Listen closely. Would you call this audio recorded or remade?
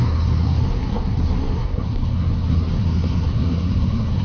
remade